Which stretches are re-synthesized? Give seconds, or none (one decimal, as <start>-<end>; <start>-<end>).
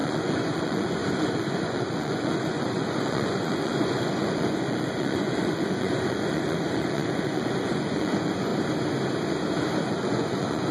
0.0-8.5; 9.9-10.7